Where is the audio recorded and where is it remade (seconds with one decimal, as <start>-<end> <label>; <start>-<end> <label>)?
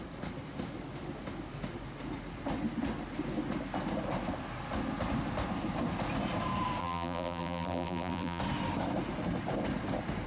0.0-6.8 recorded; 6.8-8.4 remade; 8.4-10.3 recorded